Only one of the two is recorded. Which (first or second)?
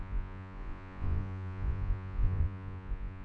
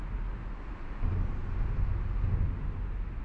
second